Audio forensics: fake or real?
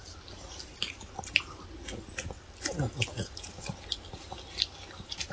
real